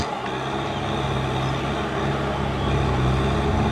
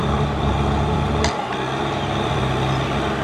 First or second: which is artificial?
second